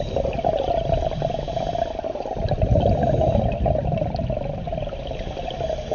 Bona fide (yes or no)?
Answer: yes